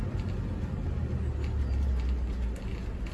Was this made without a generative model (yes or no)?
yes